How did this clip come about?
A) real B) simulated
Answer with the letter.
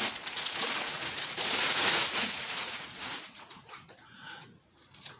B